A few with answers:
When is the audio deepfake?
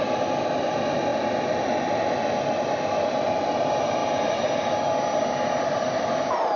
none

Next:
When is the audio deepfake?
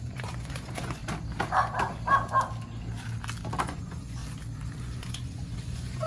0.0-1.0; 3.6-4.2; 4.8-6.1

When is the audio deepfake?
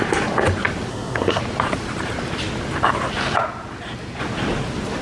0.9-1.4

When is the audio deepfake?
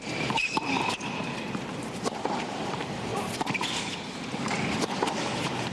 0.0-0.4; 2.2-3.1; 4.3-5.7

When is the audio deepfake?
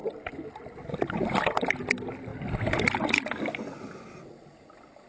none